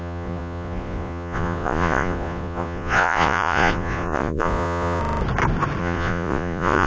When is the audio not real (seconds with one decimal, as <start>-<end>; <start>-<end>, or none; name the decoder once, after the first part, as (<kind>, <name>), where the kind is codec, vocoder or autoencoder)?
0.0-5.0 (vocoder, Vocos); 5.8-6.9